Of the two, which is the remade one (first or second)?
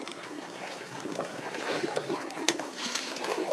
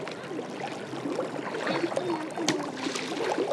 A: first